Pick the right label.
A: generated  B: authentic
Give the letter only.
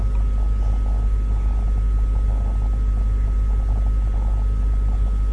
B